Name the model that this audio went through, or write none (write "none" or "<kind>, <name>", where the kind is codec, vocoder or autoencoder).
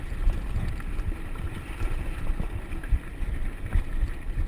none